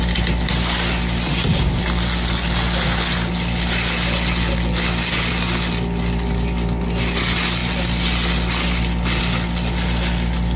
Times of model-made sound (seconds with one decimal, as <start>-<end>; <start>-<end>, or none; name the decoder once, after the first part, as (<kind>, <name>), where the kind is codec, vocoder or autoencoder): none